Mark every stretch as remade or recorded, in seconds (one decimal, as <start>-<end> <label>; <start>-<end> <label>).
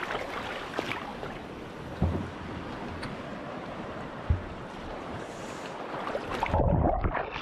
0.0-3.3 recorded; 3.3-5.3 remade; 5.3-7.4 recorded